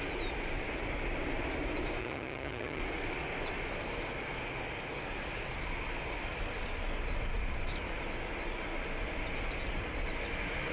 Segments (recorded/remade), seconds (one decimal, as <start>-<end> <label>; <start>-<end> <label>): 0.0-2.0 recorded; 2.0-2.8 remade; 2.8-10.7 recorded